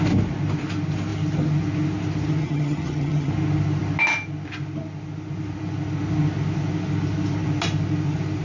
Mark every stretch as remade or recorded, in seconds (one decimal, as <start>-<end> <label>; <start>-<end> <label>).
0.0-2.4 recorded; 2.4-3.3 remade; 3.3-8.4 recorded